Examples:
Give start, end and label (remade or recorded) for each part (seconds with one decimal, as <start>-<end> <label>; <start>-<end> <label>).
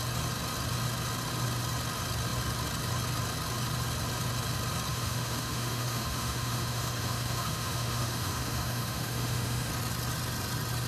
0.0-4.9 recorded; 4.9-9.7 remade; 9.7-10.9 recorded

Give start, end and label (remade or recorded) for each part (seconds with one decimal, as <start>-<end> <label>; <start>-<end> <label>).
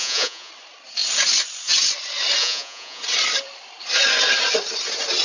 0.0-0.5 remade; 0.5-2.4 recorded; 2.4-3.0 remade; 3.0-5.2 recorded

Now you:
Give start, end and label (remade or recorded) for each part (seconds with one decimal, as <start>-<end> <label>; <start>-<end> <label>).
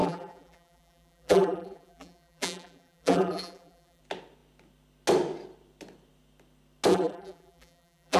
0.0-4.0 remade; 4.0-6.9 recorded; 6.9-8.2 remade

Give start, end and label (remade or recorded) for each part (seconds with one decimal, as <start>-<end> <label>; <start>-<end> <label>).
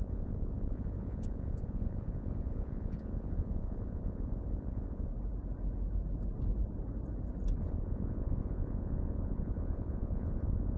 0.0-5.1 remade; 5.1-7.6 recorded; 7.6-10.8 remade